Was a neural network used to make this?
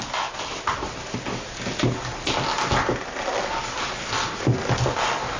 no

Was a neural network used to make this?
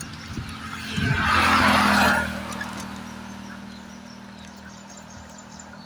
no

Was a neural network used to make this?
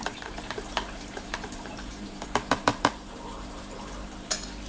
yes